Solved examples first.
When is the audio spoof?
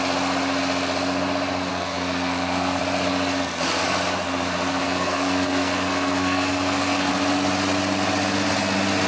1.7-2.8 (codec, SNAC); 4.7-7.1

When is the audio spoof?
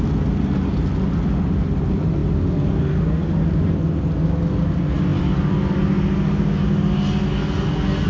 none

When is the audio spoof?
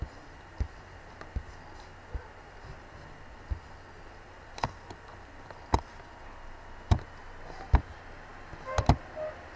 none